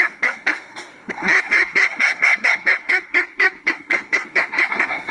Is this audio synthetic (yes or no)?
yes